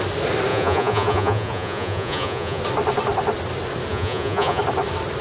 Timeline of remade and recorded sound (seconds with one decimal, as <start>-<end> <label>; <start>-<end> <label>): 0.0-0.5 recorded; 0.5-2.6 remade; 2.6-3.9 recorded; 3.9-4.6 remade; 4.6-5.2 recorded